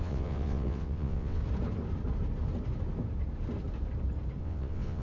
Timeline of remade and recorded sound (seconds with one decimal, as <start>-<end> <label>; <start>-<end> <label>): 0.0-1.4 remade; 1.4-4.4 recorded; 4.4-5.0 remade